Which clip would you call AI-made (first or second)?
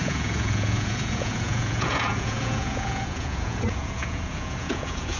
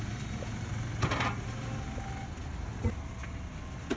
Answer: first